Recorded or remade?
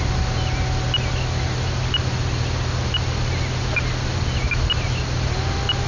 recorded